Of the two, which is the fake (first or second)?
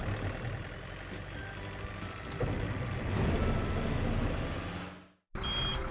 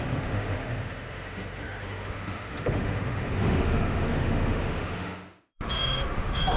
second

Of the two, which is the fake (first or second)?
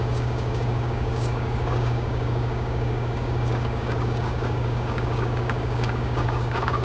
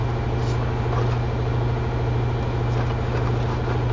first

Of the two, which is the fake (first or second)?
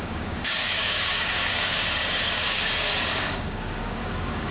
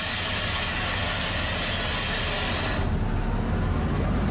first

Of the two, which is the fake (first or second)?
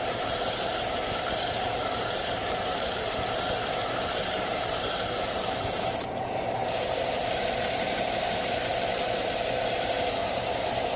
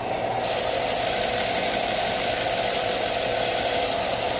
first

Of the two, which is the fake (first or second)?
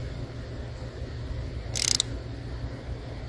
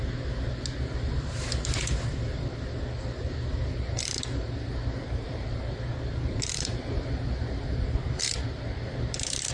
second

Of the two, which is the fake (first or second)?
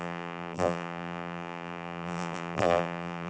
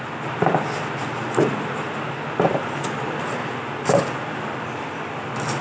first